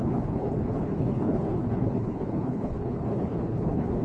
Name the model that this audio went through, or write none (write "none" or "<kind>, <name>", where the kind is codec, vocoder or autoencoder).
codec, HILCodec